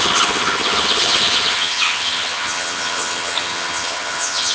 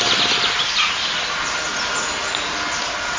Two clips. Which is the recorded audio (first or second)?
second